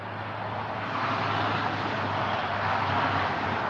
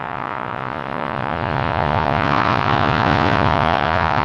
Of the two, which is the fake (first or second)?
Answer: second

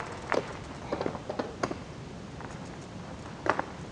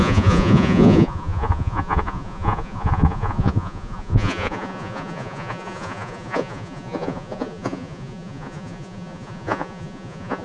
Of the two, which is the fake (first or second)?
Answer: second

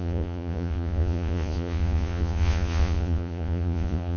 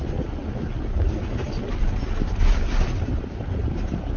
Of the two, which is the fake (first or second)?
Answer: first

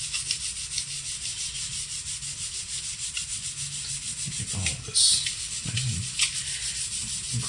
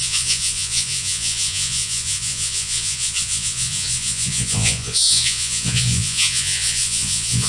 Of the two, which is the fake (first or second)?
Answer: second